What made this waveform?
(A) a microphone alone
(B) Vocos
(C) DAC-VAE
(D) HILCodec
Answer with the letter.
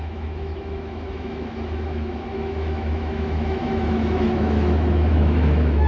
C